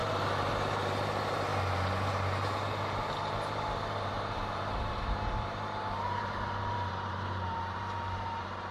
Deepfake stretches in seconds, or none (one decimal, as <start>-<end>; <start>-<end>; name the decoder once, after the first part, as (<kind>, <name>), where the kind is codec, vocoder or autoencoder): 0.0-1.5 (vocoder, BigVGAN v2); 3.2-8.7